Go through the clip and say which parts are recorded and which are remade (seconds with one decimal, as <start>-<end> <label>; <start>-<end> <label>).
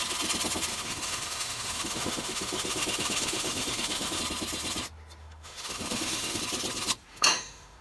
0.0-0.7 recorded; 0.7-4.2 remade; 4.2-5.2 recorded; 5.2-6.4 remade; 6.4-7.1 recorded; 7.1-7.8 remade